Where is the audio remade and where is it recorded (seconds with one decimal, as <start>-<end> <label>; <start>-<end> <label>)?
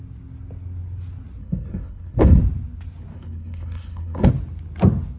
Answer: 0.0-1.4 recorded; 1.4-2.4 remade; 2.4-3.1 recorded; 3.1-4.3 remade; 4.3-5.2 recorded